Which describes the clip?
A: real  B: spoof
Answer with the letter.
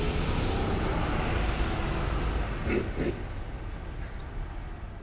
A